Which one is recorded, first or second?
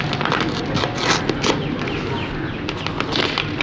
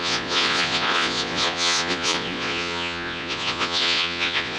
first